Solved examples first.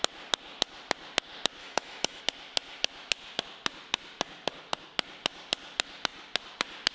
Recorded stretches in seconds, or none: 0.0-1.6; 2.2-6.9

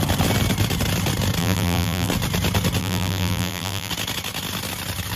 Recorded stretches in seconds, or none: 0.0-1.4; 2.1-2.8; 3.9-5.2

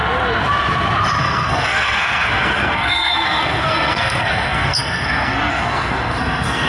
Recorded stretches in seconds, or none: 0.0-1.2

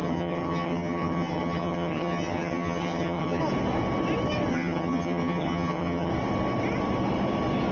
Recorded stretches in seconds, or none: 3.4-4.5; 6.1-7.7